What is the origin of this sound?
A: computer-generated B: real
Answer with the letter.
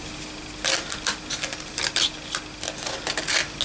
B